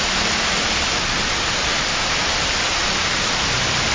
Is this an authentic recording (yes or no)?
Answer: yes